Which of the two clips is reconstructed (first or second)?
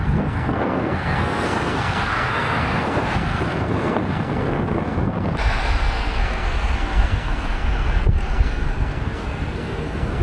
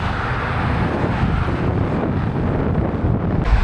first